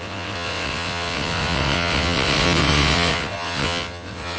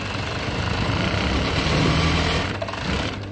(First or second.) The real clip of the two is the second